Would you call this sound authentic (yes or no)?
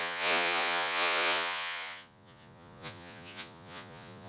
no